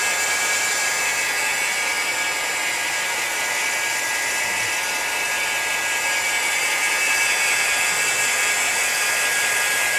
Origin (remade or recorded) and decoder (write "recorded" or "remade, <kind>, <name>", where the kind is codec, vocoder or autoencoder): recorded